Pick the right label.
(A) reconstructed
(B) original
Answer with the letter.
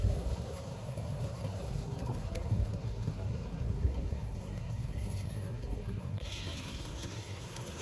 A